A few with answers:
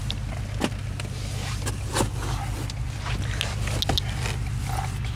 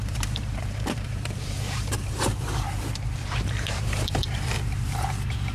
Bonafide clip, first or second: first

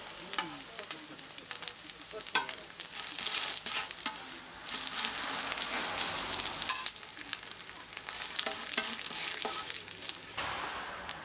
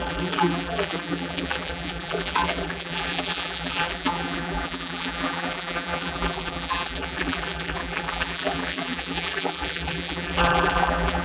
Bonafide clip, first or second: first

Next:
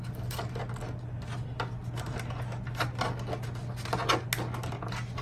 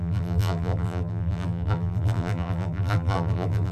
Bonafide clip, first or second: first